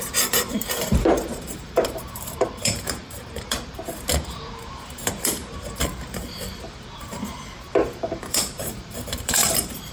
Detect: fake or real fake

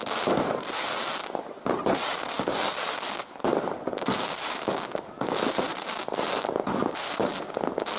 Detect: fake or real real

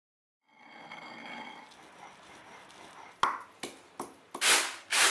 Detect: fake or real real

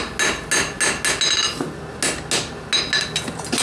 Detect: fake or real real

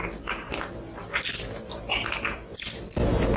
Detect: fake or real real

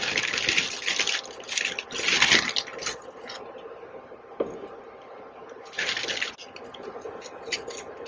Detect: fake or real real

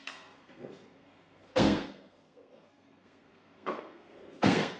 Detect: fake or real fake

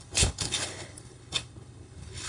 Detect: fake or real fake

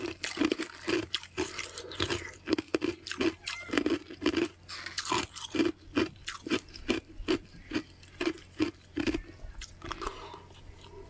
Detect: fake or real real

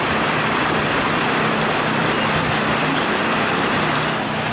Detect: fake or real fake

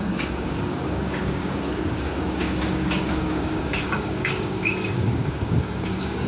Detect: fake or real fake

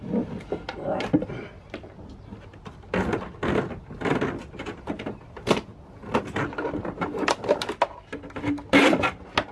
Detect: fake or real real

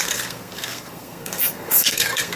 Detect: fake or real fake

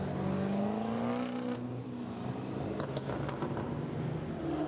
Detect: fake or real real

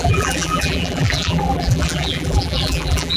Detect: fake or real fake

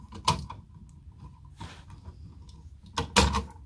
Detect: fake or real real